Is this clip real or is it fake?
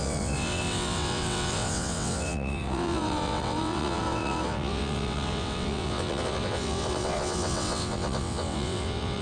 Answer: fake